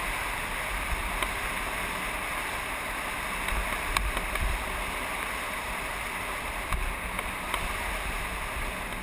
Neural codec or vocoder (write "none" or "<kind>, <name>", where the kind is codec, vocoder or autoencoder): none